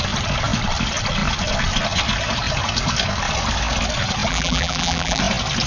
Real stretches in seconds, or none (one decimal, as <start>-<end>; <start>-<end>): 0.0-4.3; 5.2-5.7